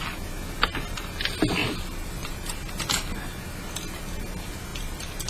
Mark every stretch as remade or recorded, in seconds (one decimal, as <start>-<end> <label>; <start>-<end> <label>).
0.0-1.6 recorded; 1.6-3.5 remade; 3.5-4.7 recorded; 4.7-5.3 remade

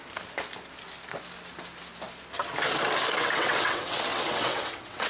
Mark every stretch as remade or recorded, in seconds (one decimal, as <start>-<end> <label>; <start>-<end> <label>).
0.0-3.1 recorded; 3.1-5.1 remade

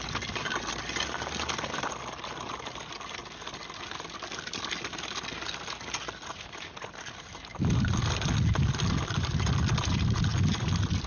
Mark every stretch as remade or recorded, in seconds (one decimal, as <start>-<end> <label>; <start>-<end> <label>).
0.0-3.2 remade; 3.2-7.4 recorded; 7.4-11.1 remade

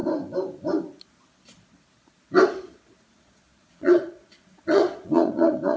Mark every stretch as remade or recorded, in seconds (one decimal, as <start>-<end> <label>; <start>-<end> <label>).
0.0-3.1 recorded; 3.1-5.8 remade

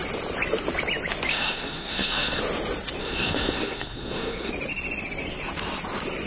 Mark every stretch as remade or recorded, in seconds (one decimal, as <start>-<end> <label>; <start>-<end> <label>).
0.0-1.3 recorded; 1.3-2.4 remade; 2.4-3.0 recorded; 3.0-4.5 remade; 4.5-6.3 recorded

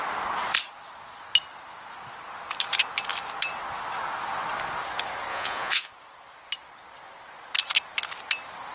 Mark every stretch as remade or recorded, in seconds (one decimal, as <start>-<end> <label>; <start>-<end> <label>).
0.0-5.3 recorded; 5.3-5.9 remade; 5.9-8.7 recorded

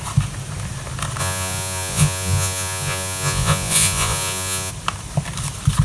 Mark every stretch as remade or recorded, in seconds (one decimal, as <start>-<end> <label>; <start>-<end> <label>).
0.0-1.2 recorded; 1.2-4.7 remade; 4.7-5.8 recorded